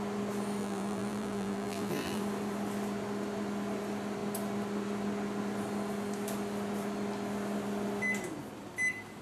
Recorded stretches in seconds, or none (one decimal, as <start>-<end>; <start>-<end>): 0.0-0.6; 2.2-9.2